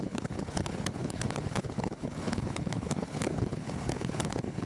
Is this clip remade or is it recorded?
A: remade